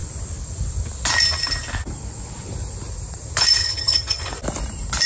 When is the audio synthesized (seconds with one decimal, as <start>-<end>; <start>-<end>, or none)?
3.6-4.2